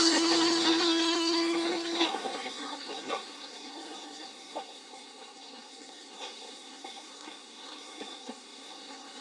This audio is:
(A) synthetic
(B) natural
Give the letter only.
A